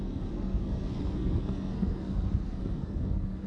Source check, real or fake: fake